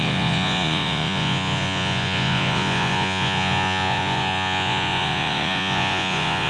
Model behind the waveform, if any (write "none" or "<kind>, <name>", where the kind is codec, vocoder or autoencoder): vocoder, Vocos